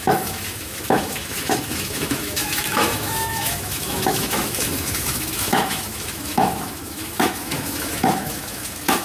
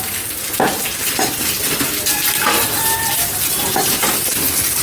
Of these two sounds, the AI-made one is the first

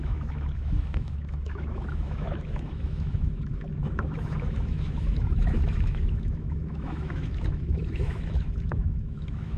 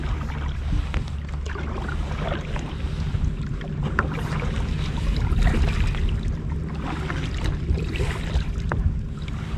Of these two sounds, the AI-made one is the first